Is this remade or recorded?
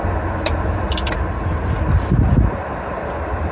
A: recorded